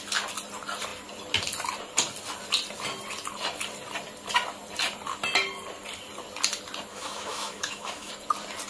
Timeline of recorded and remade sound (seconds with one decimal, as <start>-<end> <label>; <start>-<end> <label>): 0.0-6.9 recorded; 6.9-8.1 remade; 8.1-8.7 recorded